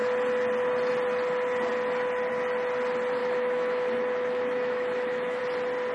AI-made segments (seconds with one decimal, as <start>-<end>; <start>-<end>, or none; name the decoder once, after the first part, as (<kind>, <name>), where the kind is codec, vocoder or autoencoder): 3.2-5.4 (autoencoder, DAC-VAE)